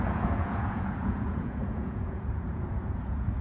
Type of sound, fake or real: fake